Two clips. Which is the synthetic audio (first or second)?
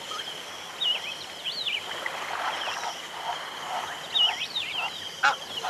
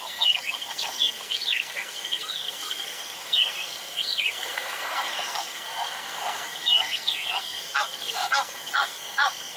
second